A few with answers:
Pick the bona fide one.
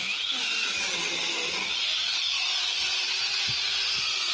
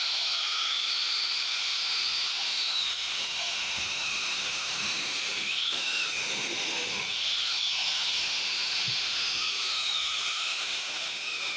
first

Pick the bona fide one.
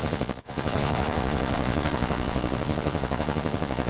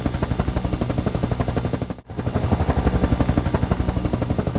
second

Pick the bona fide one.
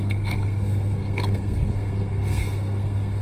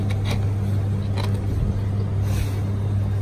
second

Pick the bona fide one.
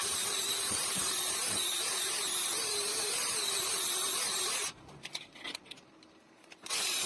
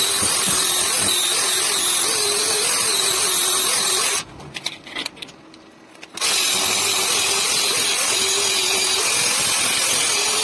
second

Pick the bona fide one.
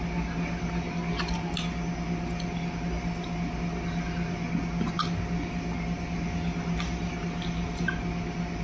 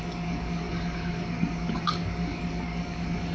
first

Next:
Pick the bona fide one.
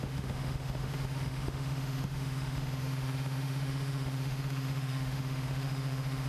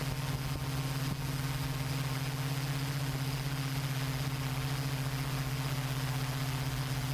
second